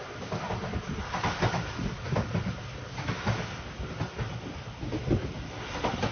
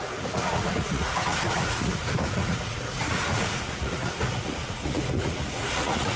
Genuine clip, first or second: first